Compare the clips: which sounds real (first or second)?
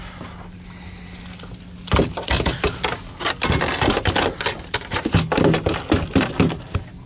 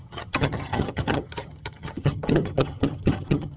first